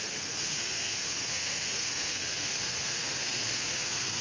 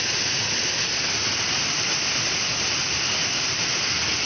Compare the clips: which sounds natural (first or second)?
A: second